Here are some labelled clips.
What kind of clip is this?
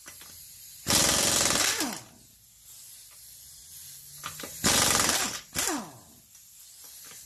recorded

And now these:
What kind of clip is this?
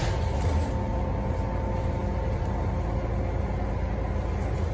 recorded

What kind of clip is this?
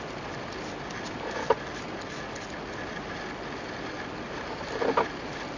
recorded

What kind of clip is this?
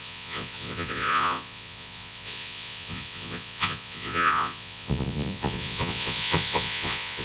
remade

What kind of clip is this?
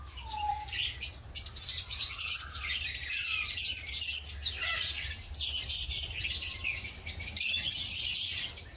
recorded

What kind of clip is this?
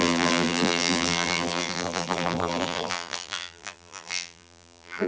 remade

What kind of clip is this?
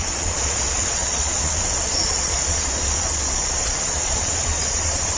remade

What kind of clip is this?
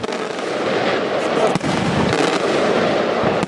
recorded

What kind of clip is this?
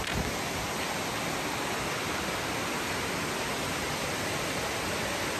recorded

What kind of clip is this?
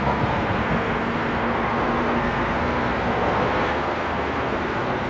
remade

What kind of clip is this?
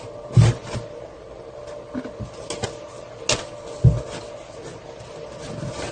recorded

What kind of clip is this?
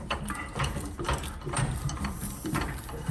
remade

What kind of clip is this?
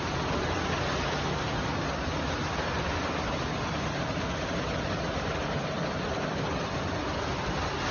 recorded